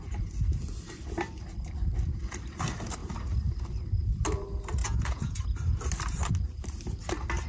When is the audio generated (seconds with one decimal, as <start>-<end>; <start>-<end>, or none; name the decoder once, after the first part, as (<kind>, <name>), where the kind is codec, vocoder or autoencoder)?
4.8-5.4 (vocoder, Vocos)